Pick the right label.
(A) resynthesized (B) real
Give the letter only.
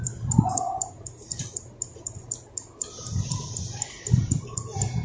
B